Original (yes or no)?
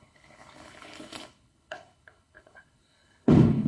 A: no